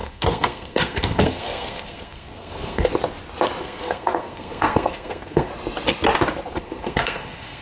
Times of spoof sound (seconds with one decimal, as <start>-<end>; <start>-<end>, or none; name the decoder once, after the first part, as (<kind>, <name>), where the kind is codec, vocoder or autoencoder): 0.0-2.9 (codec, SNAC); 3.6-5.5; 6.6-7.6